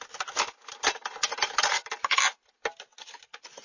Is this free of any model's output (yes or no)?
yes